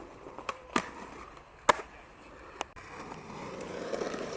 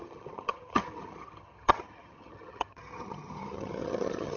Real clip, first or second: first